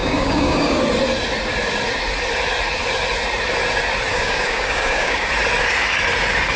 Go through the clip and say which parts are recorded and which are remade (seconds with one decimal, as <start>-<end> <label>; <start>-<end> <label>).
0.0-0.8 remade; 0.8-4.1 recorded; 4.1-5.3 remade; 5.3-6.6 recorded